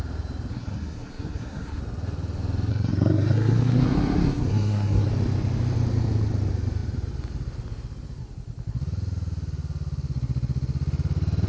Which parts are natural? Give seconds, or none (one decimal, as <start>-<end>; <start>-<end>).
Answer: 0.0-0.5; 1.8-2.7; 5.1-11.5